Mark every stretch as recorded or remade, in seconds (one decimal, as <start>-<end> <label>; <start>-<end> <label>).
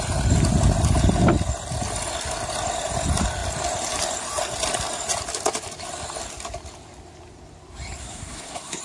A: 0.0-8.0 recorded; 8.0-8.8 remade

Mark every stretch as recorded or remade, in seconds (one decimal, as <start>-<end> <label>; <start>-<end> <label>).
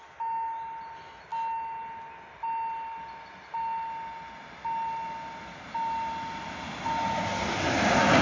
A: 0.0-8.2 recorded